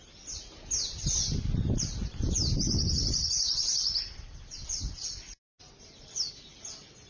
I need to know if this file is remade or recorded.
recorded